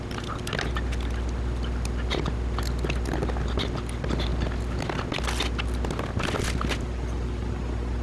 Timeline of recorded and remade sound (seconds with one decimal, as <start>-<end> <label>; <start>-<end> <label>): 0.0-8.0 recorded